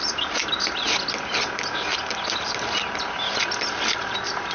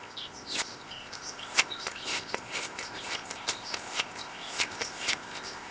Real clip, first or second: first